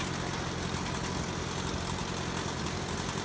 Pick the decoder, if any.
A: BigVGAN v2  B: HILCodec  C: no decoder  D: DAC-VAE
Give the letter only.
C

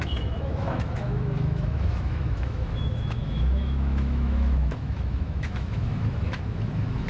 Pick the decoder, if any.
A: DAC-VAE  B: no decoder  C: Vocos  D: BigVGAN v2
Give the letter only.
A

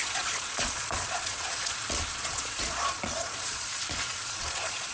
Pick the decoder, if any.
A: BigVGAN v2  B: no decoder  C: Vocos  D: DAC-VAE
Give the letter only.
C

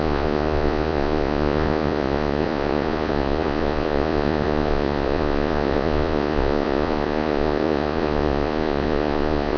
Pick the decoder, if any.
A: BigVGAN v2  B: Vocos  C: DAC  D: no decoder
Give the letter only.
B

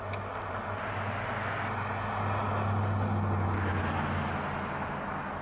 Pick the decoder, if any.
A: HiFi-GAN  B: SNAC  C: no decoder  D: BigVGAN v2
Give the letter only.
C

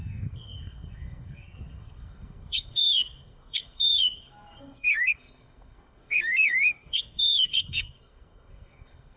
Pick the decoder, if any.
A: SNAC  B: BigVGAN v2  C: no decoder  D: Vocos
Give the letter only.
A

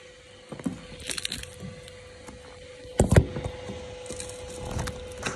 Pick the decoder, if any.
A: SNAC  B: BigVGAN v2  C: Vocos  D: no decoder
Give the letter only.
D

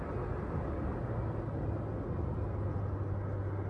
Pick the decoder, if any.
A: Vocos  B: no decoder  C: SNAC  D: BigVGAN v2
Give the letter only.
B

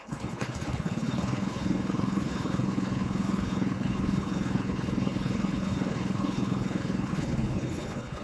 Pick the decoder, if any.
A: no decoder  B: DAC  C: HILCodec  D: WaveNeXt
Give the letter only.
C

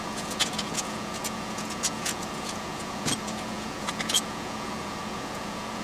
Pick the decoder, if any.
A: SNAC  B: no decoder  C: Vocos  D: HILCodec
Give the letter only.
C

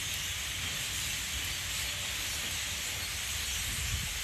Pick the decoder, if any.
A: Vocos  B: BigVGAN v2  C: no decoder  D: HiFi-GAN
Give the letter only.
C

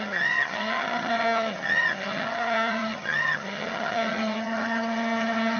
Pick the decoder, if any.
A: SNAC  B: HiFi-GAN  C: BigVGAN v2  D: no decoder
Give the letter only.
B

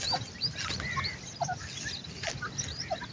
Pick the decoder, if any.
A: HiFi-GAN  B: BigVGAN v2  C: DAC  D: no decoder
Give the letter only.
D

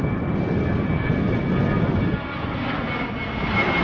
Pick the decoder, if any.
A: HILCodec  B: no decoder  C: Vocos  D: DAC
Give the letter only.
B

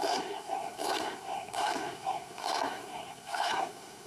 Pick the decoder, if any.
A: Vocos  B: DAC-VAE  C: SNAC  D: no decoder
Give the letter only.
C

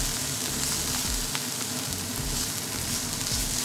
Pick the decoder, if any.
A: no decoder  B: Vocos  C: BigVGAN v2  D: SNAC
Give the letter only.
A